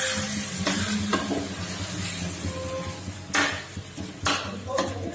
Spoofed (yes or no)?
no